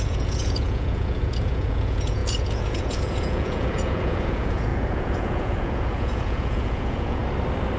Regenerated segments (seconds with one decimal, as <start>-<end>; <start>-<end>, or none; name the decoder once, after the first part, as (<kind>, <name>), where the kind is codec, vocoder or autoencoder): 0.0-7.2 (vocoder, Vocos)